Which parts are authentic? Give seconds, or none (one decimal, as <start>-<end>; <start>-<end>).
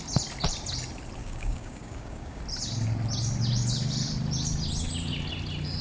0.0-1.2; 2.4-5.8